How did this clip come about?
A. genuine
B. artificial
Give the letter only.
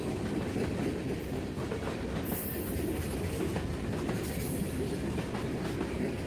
A